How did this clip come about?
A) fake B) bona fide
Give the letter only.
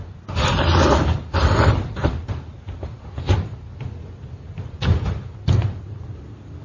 B